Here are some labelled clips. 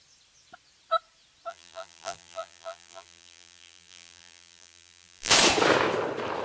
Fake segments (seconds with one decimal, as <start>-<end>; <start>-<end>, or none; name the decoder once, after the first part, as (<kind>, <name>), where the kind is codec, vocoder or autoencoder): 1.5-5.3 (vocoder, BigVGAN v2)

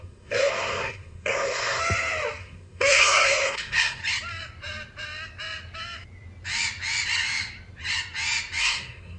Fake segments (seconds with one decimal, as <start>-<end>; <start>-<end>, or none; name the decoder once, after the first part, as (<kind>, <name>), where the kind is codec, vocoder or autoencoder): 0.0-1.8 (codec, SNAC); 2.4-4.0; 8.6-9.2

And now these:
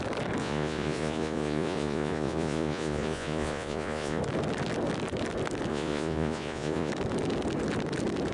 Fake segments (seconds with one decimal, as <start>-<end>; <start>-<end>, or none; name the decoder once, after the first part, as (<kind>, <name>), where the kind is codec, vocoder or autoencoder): 0.4-4.2 (vocoder, Vocos); 5.7-6.9

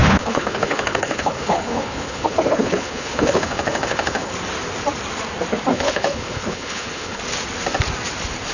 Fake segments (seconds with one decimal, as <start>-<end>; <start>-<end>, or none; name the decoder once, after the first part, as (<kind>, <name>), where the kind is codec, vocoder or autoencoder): 0.0-4.3 (codec, HILCodec); 5.7-7.2

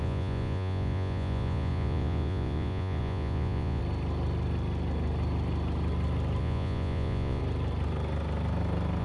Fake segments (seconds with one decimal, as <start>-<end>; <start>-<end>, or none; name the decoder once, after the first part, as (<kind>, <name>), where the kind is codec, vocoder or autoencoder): 0.0-3.8 (vocoder, Vocos); 6.4-7.4

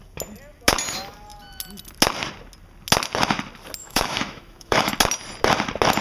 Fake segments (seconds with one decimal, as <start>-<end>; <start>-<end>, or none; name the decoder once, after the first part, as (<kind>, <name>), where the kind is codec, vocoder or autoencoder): 3.8-4.9 (autoencoder, DAC-VAE)

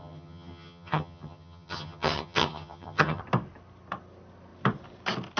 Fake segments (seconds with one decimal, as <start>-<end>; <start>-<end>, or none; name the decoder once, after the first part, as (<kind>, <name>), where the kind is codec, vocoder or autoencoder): 0.0-3.2 (vocoder, HiFi-GAN)

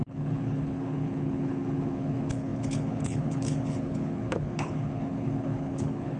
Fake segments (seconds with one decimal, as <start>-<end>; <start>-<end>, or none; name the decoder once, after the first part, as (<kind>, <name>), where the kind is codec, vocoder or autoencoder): 0.0-6.2 (codec, HILCodec)